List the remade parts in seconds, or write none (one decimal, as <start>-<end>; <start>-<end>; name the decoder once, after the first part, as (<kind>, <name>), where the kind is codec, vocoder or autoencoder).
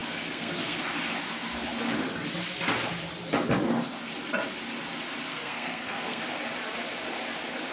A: 0.0-0.8 (codec, SNAC); 5.3-6.2